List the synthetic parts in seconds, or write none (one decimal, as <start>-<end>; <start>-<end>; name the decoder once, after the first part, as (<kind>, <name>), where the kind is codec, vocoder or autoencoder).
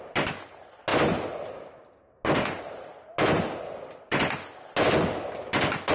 none